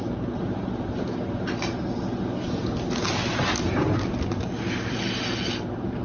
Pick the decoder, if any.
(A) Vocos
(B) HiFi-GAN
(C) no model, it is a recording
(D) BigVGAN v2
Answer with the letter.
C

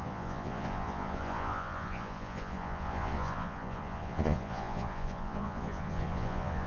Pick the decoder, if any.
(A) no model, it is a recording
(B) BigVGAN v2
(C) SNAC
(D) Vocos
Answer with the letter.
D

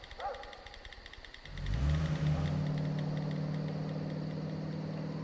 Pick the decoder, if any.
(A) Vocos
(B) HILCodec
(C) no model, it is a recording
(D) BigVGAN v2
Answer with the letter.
C